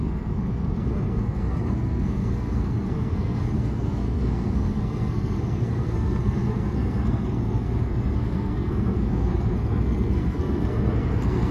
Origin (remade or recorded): remade